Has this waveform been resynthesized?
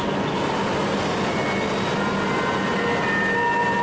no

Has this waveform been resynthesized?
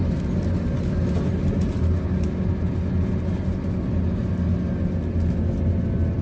no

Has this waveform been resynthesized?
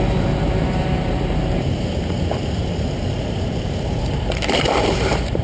yes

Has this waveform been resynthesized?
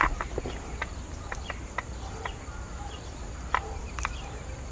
yes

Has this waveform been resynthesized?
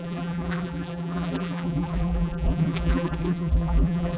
yes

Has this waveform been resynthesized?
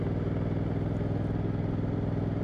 no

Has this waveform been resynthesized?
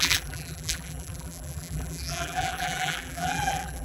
yes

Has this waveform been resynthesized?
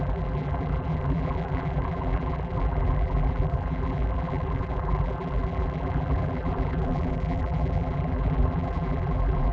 yes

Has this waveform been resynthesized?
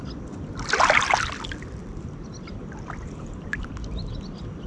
no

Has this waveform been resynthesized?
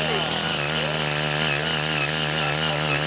no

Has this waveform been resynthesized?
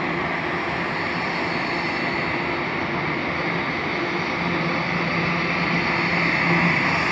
no